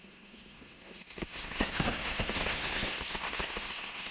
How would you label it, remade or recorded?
remade